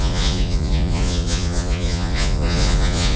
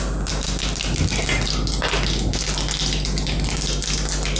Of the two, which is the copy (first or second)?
first